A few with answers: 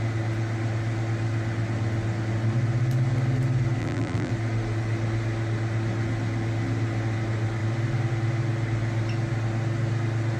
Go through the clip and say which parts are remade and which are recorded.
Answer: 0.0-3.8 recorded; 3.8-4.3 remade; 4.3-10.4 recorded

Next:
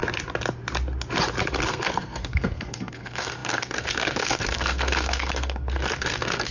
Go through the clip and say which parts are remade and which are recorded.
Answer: 0.0-1.7 recorded; 1.7-6.5 remade

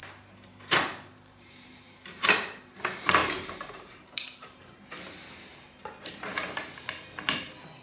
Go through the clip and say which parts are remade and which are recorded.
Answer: 0.0-2.6 remade; 2.6-3.2 recorded; 3.2-4.8 remade; 4.8-7.8 recorded

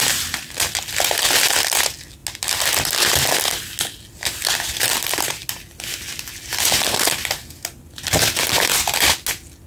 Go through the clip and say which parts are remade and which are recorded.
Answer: 0.0-9.7 recorded

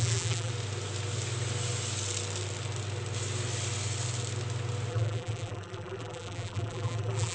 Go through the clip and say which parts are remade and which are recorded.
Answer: 0.0-0.5 remade; 0.5-4.9 recorded; 4.9-7.3 remade

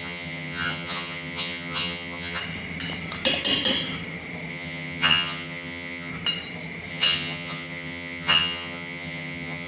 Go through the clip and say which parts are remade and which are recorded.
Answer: 0.0-2.4 remade; 2.4-4.5 recorded; 4.5-6.1 remade; 6.1-6.9 recorded; 6.9-9.7 remade